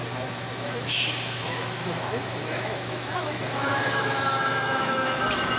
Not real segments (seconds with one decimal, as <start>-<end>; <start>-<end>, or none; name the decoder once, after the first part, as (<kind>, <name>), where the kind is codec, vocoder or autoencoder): 0.6-5.6 (autoencoder, DAC-VAE)